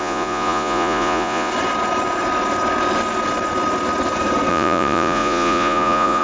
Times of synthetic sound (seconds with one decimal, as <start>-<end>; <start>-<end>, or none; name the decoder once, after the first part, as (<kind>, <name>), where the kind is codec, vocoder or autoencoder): 0.0-1.5 (vocoder, Vocos); 4.5-6.2